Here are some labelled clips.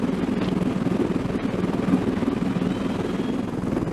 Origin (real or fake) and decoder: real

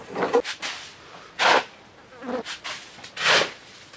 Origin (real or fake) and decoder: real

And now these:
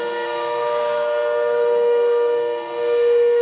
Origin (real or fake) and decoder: fake, codec, SNAC